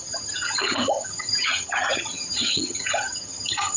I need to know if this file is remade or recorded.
remade